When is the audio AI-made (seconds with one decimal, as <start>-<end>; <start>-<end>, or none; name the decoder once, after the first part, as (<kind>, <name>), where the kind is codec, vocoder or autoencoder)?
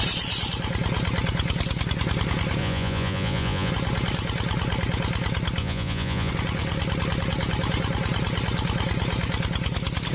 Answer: 2.6-3.7 (vocoder, Vocos); 5.6-6.3